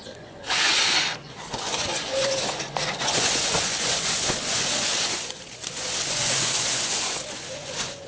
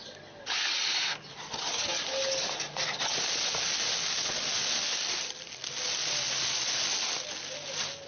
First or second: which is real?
second